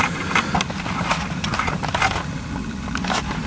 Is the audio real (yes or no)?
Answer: yes